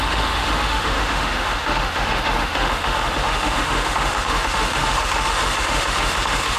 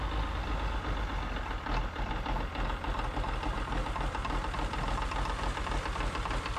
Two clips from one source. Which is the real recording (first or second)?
second